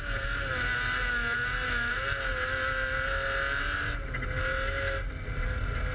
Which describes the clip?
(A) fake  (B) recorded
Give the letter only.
B